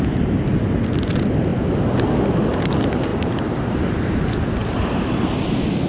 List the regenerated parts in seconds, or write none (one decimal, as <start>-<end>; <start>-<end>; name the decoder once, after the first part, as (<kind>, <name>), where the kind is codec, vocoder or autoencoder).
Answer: 3.1-4.1 (vocoder, BigVGAN v2); 4.6-5.2